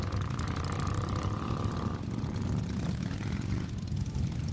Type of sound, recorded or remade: remade